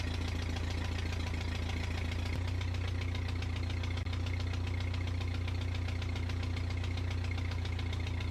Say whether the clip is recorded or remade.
recorded